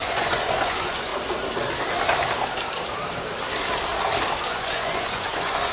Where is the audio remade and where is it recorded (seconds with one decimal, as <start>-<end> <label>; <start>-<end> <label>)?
0.0-1.1 remade; 1.1-4.5 recorded; 4.5-5.7 remade